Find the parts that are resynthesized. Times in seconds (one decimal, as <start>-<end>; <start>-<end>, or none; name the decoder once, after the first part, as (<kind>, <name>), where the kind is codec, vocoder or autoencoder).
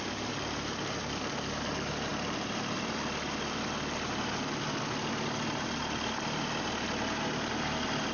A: none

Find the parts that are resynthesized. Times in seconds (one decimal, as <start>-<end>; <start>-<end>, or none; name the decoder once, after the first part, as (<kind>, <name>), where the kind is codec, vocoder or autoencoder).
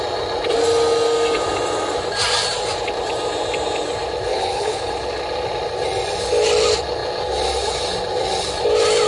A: 4.3-4.9 (codec, HILCodec)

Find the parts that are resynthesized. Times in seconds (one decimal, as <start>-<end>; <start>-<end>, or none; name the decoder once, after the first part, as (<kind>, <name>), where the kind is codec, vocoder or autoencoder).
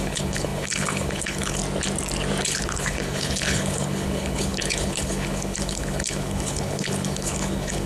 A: 0.0-1.6 (codec, HILCodec); 2.4-7.9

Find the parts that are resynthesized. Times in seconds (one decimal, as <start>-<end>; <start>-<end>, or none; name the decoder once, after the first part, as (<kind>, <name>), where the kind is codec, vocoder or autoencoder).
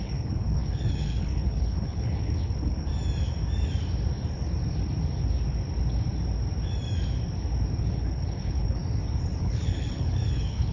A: 0.0-2.9 (codec, HILCodec); 7.8-8.8; 9.4-10.7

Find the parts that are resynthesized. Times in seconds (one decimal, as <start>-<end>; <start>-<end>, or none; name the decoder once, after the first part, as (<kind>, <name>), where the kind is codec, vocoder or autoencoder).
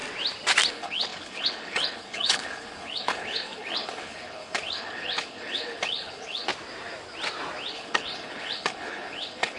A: 0.7-6.5 (codec, HILCodec); 7.7-9.6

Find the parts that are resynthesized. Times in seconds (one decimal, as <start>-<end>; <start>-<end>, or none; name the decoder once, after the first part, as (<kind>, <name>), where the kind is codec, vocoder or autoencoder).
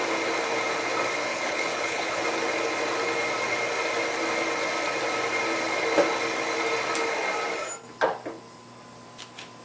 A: 1.3-2.2 (codec, HILCodec)